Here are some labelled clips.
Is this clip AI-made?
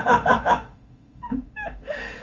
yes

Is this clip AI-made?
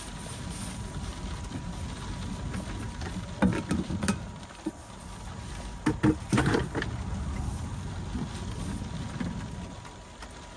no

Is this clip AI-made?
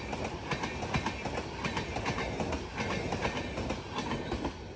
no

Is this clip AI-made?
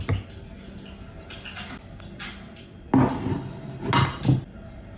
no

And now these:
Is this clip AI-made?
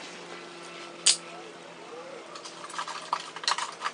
no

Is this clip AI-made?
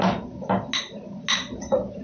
no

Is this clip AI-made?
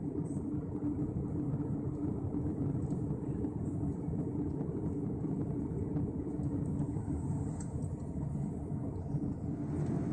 no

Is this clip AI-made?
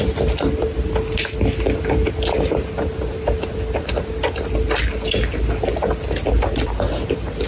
no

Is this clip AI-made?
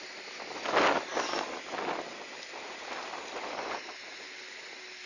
no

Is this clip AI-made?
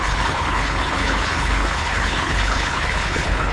yes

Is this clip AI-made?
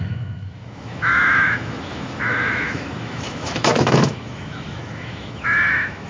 yes